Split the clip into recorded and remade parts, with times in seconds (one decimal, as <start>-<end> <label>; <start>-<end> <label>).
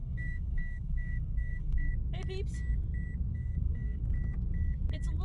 0.0-1.9 remade; 1.9-3.3 recorded; 3.3-4.0 remade; 4.0-5.2 recorded